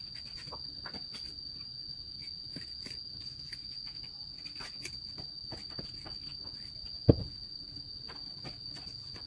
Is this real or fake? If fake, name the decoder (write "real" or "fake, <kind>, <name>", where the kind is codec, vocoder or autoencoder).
real